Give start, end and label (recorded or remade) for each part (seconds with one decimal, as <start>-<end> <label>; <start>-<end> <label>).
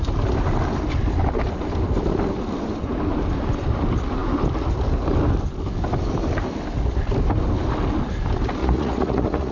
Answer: 0.0-8.6 recorded; 8.6-9.5 remade